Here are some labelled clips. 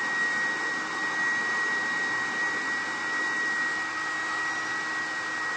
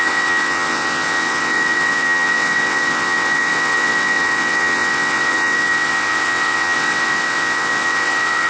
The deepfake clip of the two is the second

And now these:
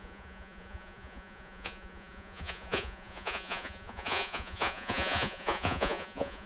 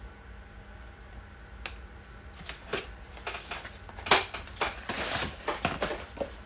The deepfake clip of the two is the first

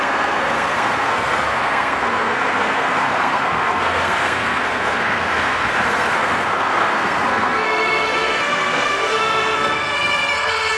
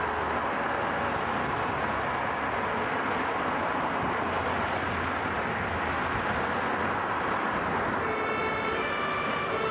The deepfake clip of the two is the first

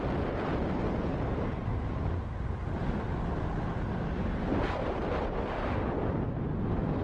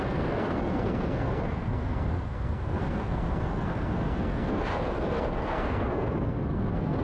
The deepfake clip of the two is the second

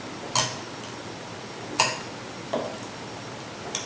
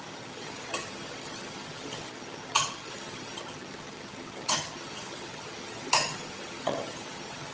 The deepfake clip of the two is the second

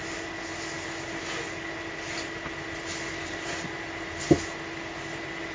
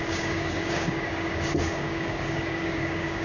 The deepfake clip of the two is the second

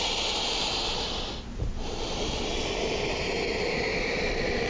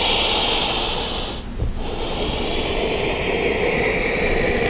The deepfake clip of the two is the first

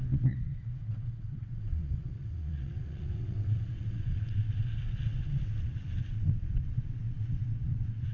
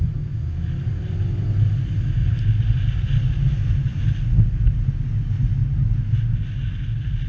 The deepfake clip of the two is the first